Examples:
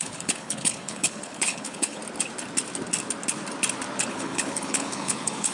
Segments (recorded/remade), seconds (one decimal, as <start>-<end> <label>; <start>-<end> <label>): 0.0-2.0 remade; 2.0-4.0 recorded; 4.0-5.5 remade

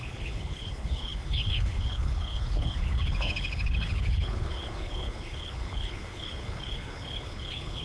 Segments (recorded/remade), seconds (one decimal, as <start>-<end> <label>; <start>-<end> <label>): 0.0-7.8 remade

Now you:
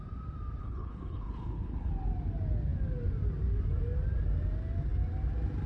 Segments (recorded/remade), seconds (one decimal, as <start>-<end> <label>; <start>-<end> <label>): 0.0-0.6 recorded; 0.6-1.9 remade; 1.9-5.7 recorded

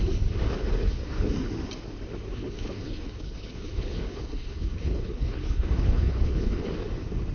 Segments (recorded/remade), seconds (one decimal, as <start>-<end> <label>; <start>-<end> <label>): 0.0-0.8 recorded; 0.8-1.3 remade; 1.3-2.3 recorded; 2.3-6.7 remade; 6.7-7.3 recorded